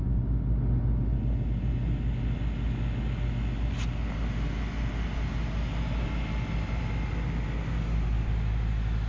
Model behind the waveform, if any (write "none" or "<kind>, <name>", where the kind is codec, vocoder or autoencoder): none